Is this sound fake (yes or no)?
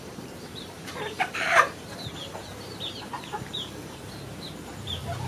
yes